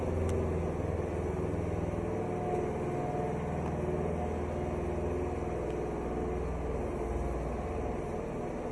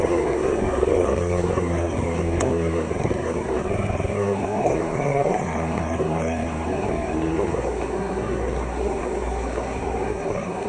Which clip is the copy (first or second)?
second